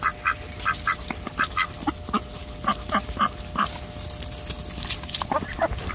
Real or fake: real